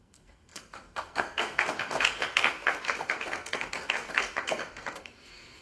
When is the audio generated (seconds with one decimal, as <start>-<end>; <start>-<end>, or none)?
0.0-5.6